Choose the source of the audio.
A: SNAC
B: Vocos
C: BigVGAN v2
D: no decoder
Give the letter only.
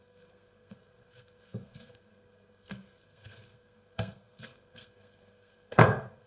A